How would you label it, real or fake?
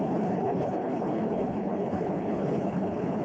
fake